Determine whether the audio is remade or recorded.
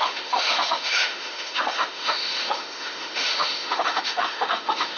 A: remade